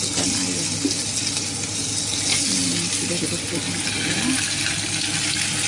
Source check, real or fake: real